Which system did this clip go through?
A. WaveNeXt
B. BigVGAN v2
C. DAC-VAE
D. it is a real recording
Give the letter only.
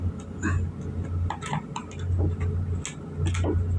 D